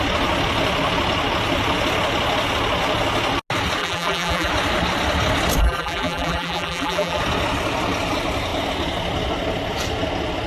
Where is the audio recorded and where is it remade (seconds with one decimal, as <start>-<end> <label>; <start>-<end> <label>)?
0.0-3.8 recorded; 3.8-4.5 remade; 4.5-5.6 recorded; 5.6-7.2 remade; 7.2-10.5 recorded